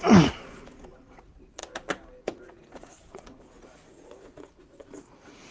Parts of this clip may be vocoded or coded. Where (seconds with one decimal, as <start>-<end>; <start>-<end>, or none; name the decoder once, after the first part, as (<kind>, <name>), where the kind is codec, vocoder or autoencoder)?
0.0-1.6 (vocoder, Vocos); 2.2-5.5